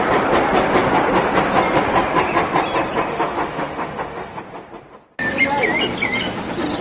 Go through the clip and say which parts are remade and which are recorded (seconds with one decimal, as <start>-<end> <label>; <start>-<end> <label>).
0.0-3.1 recorded; 3.1-4.4 remade; 4.4-6.8 recorded